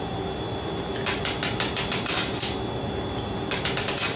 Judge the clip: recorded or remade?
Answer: recorded